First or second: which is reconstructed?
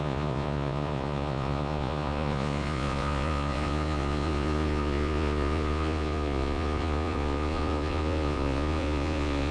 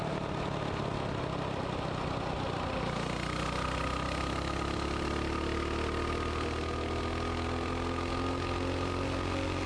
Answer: first